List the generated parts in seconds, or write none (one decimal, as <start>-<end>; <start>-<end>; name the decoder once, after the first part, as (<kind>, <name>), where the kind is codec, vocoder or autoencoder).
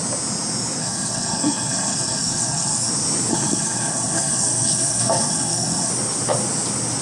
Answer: 0.8-2.9 (codec, SNAC); 3.3-5.9